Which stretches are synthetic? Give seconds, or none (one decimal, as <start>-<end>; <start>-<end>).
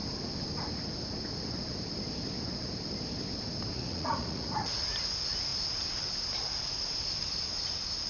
3.7-4.8